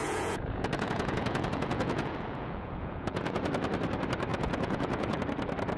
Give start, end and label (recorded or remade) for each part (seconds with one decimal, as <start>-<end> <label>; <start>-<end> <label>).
0.0-3.5 remade; 3.5-4.3 recorded; 4.3-5.2 remade; 5.2-5.8 recorded